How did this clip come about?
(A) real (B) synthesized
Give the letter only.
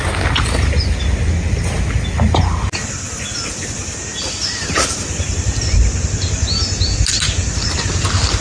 A